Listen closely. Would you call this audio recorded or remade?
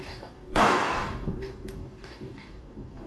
remade